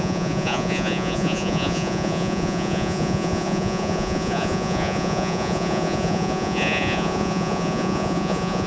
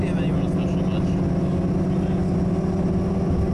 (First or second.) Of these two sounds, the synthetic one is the first